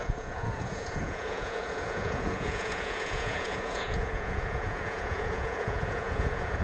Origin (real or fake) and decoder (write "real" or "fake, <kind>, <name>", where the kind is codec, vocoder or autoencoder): fake, vocoder, Vocos